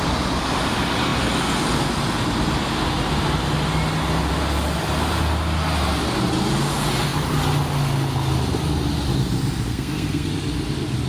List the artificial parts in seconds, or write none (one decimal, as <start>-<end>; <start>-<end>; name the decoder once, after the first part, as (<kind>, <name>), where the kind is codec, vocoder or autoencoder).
9.7-10.3 (codec, SNAC)